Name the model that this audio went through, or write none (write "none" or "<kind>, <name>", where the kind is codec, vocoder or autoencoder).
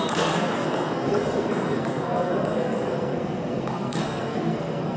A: codec, SNAC